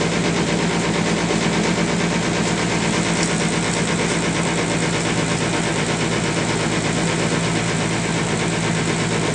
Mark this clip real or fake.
real